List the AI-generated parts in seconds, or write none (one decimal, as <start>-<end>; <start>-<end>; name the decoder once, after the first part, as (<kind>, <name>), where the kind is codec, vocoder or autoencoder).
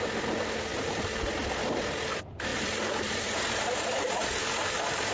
0.7-1.2 (vocoder, BigVGAN v2); 2.5-5.1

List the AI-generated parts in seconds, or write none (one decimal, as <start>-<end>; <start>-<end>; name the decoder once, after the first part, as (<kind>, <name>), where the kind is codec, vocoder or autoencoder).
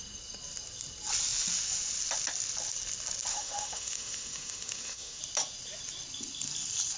3.3-5.2 (autoencoder, DAC-VAE)